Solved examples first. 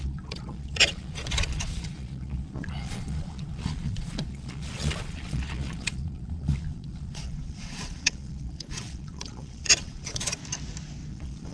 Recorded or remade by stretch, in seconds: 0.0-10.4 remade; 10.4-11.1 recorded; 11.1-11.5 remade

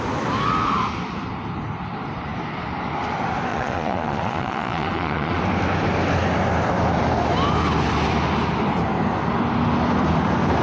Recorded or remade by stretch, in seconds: 0.0-3.5 recorded; 3.5-5.4 remade; 5.4-10.6 recorded